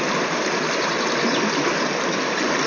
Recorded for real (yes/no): yes